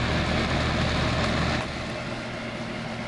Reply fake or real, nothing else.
real